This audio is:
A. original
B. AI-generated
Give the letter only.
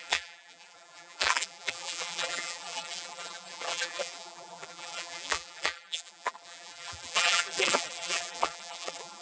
B